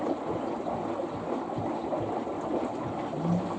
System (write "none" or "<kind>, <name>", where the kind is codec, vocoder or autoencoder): none